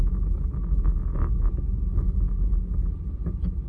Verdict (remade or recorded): recorded